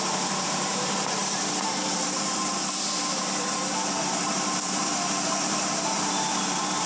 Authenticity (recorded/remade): remade